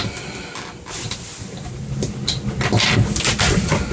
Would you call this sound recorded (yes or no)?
yes